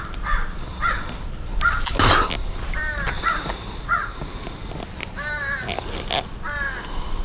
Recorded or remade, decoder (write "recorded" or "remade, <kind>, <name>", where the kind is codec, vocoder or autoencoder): recorded